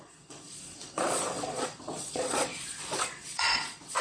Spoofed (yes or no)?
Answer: yes